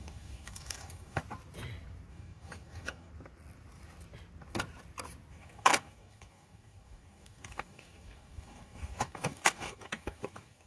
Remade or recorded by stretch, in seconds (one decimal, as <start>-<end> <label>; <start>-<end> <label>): 0.0-1.2 remade; 1.2-2.1 recorded; 2.1-3.1 remade; 3.1-5.3 recorded; 5.3-10.7 remade